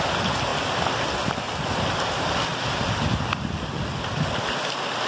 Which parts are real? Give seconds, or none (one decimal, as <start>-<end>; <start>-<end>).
0.0-5.1